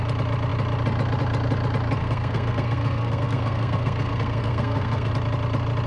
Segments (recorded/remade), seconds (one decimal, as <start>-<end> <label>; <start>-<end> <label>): 0.0-2.0 recorded; 2.0-5.1 remade; 5.1-5.9 recorded